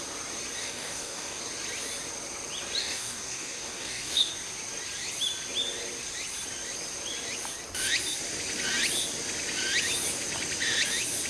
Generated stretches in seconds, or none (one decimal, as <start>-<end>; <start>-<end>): 0.6-1.4; 2.8-4.3